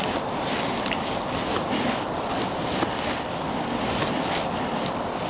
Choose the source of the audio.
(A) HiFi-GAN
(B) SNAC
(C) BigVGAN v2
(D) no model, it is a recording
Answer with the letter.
D